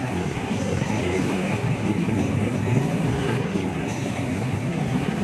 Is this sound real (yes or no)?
no